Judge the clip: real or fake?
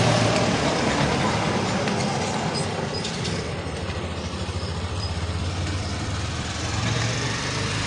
fake